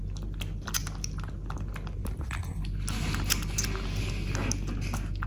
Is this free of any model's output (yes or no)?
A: yes